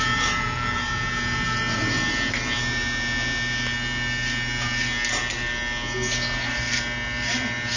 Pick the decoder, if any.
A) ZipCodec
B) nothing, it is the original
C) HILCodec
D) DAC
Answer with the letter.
B